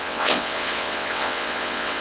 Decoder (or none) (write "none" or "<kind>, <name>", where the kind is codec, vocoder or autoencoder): vocoder, WaveNeXt